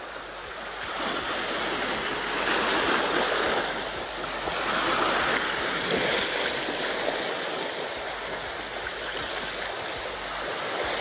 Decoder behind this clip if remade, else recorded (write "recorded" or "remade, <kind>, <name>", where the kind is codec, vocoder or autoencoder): recorded